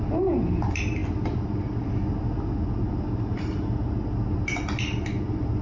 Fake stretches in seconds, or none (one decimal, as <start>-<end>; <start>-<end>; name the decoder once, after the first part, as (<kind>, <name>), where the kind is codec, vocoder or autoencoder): none